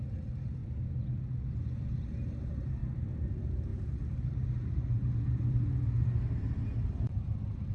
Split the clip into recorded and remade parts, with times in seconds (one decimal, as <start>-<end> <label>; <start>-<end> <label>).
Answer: 0.0-0.6 remade; 0.6-1.6 recorded; 1.6-2.8 remade; 2.8-3.3 recorded; 3.3-7.7 remade